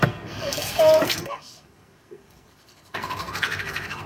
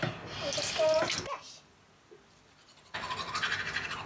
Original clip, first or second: second